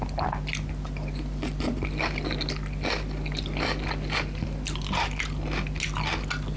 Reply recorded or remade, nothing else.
recorded